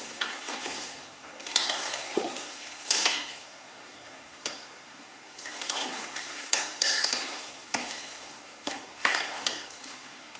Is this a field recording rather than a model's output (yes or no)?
no